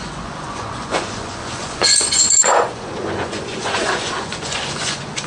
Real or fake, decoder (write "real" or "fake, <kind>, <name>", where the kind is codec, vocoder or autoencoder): fake, vocoder, Vocos